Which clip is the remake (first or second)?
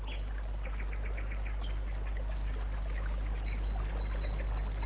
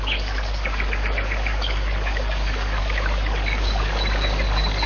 second